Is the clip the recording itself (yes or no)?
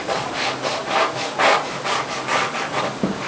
no